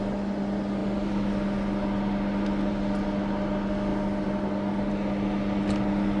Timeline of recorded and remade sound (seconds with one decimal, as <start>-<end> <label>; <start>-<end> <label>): 0.0-6.2 recorded